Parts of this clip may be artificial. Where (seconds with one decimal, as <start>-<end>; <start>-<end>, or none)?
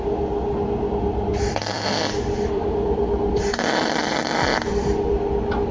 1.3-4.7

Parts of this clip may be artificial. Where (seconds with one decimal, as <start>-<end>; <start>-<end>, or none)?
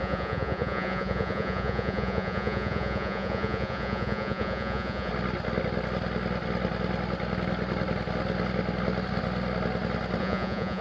0.0-5.1; 10.2-10.8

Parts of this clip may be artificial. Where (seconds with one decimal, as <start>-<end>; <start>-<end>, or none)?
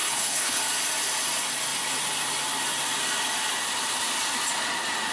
0.0-0.6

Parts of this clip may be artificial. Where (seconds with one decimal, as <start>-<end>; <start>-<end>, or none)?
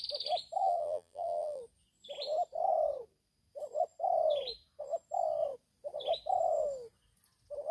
0.6-1.6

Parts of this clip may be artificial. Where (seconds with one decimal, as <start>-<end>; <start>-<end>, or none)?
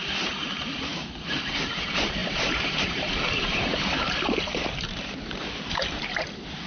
2.2-6.2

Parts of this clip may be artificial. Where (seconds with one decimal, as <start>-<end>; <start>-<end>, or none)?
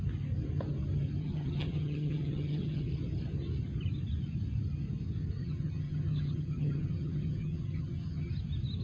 1.2-2.9; 5.4-8.3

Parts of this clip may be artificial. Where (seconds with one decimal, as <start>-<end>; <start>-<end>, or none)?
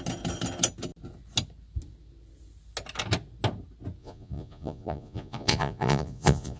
4.0-6.6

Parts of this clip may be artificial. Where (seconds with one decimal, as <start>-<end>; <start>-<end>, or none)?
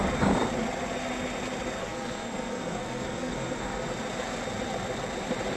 1.8-3.9